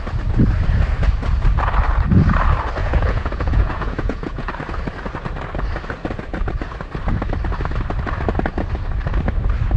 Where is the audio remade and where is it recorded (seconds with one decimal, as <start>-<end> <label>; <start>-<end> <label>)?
0.0-2.8 recorded; 2.8-4.5 remade; 4.5-9.8 recorded

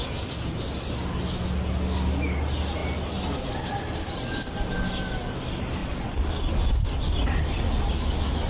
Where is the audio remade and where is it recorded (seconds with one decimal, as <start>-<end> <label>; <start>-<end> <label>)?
0.0-5.8 recorded; 5.8-6.3 remade; 6.3-8.5 recorded

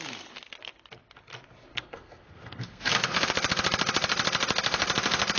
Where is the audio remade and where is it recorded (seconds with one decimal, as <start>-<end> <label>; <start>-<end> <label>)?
0.0-1.7 recorded; 1.7-2.9 remade; 2.9-5.4 recorded

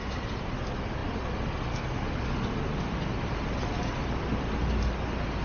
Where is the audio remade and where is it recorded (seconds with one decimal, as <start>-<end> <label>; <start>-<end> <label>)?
0.0-5.4 recorded

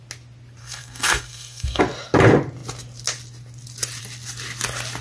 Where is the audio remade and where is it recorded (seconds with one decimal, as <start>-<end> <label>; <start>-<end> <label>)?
0.0-0.6 recorded; 0.6-1.8 remade; 1.8-5.0 recorded

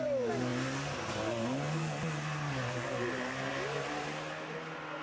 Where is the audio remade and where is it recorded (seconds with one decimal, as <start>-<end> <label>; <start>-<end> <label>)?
0.0-5.0 recorded

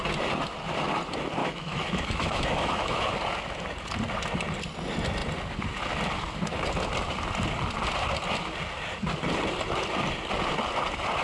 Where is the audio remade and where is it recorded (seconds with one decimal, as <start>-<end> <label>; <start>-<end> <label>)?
0.0-1.4 recorded; 1.4-3.1 remade; 3.1-11.2 recorded

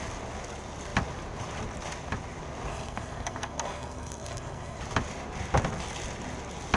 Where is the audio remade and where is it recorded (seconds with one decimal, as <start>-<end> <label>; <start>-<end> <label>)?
0.0-2.7 recorded; 2.7-4.8 remade; 4.8-6.8 recorded